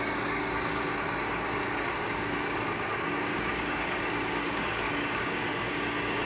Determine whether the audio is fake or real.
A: fake